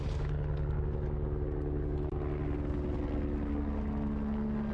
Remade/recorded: recorded